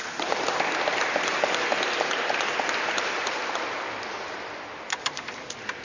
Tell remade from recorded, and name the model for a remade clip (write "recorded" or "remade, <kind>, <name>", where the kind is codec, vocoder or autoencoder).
recorded